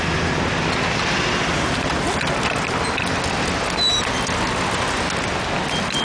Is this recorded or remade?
recorded